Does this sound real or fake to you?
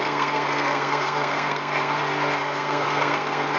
fake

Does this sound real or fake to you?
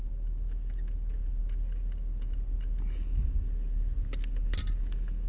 real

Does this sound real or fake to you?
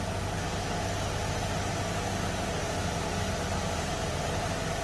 real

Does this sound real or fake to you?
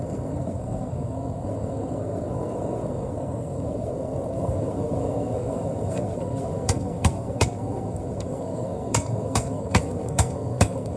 fake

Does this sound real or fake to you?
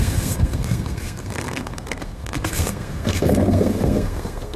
fake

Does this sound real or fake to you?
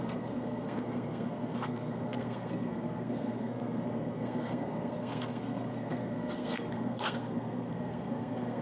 fake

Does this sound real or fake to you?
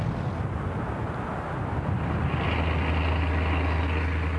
real